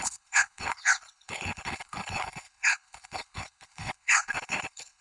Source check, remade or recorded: remade